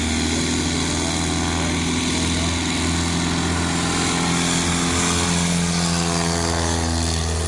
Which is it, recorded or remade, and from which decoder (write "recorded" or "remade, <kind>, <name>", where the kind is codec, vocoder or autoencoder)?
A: recorded